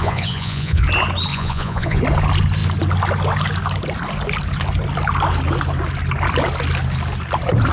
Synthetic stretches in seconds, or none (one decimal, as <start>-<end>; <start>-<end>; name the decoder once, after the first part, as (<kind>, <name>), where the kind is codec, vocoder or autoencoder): 0.0-0.8 (vocoder, Vocos); 1.3-2.0